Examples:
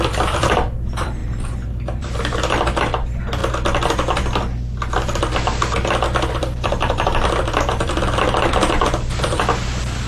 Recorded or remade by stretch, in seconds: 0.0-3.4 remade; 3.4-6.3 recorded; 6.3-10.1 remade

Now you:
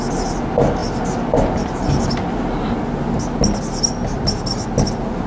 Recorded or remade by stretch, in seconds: 0.0-5.3 recorded